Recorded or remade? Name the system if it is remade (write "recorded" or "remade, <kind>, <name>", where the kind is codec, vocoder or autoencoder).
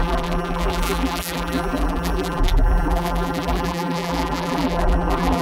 remade, vocoder, BigVGAN v2